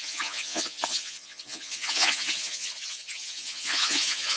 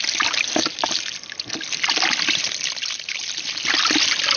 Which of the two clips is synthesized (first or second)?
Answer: first